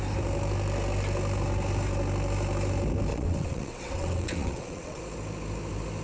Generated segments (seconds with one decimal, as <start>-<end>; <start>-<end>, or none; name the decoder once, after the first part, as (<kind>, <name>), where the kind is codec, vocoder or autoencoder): 3.1-5.0 (vocoder, WaveNeXt)